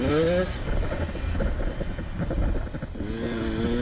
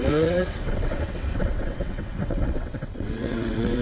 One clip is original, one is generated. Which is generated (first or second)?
second